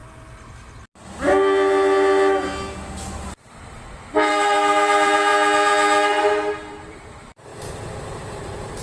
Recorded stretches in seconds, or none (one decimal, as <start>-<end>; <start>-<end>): 0.0-4.3; 5.3-6.2; 7.5-8.2